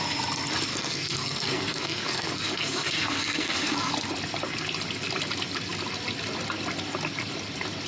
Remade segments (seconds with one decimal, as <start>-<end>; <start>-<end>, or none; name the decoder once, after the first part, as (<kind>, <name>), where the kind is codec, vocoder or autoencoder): 0.7-3.9 (codec, SNAC)

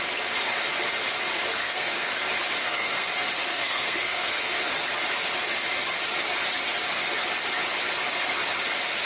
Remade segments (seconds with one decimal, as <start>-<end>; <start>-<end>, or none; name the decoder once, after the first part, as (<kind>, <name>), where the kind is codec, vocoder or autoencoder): 1.6-2.1 (codec, SNAC); 2.6-3.1; 3.5-4.7

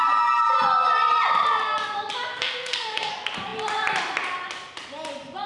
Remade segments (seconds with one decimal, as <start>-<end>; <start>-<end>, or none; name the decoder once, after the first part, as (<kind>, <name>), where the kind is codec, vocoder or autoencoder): 2.3-3.1 (codec, SNAC)

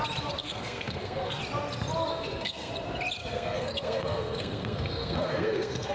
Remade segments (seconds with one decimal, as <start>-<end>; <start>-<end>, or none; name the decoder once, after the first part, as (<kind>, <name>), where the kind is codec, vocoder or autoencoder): 0.4-1.4 (codec, SNAC); 2.1-2.7; 3.2-5.9